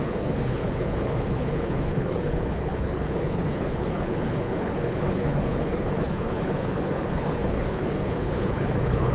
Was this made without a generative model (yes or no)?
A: no